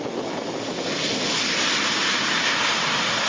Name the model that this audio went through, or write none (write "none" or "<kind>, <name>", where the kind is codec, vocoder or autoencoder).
none